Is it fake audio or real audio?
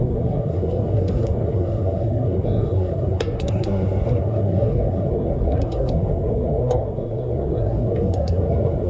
fake